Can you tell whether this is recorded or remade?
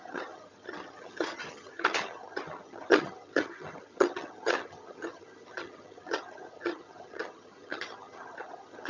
remade